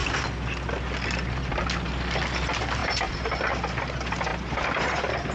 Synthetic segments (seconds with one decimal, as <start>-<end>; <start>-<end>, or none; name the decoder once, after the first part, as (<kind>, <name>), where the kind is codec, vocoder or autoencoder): 2.8-3.5 (vocoder, BigVGAN v2); 4.3-5.3